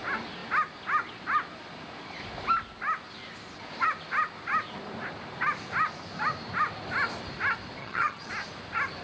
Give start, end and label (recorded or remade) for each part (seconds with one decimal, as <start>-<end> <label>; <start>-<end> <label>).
0.0-7.8 recorded; 7.8-8.3 remade; 8.3-9.0 recorded